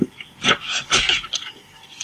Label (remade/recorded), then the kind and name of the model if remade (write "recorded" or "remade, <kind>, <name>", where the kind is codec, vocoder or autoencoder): remade, codec, DAC